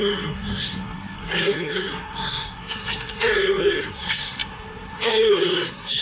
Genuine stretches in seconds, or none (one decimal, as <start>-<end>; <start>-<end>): none